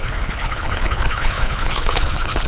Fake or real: fake